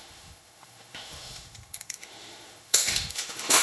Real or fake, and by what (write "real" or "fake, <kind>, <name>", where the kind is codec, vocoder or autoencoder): fake, autoencoder, DAC-VAE